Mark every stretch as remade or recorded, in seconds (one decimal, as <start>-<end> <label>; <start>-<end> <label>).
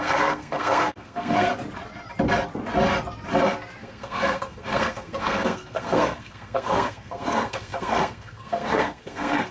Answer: 0.0-1.5 remade; 1.5-3.8 recorded; 3.8-9.5 remade